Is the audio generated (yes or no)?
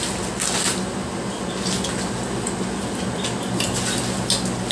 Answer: no